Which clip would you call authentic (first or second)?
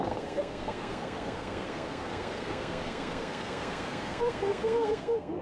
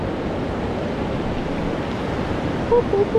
second